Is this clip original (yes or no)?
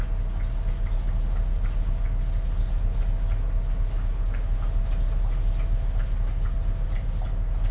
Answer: yes